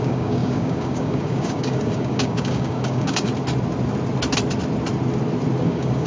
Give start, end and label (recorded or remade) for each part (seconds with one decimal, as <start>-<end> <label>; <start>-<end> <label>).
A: 0.0-3.3 remade; 3.3-5.6 recorded; 5.6-6.1 remade

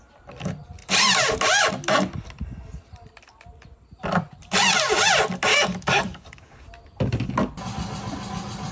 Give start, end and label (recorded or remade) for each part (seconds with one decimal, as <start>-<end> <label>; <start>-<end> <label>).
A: 0.0-5.5 recorded; 5.5-6.6 remade; 6.6-8.7 recorded

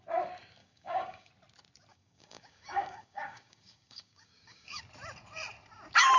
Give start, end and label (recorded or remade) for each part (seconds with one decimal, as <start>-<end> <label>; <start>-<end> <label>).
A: 0.0-0.6 recorded; 0.6-1.3 remade; 1.3-1.9 recorded; 1.9-4.8 remade; 4.8-6.2 recorded

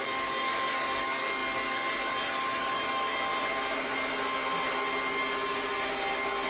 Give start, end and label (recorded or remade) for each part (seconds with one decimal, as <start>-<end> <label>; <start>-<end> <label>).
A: 0.0-3.3 remade; 3.3-6.5 recorded